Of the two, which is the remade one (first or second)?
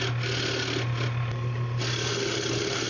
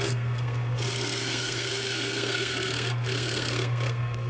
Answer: second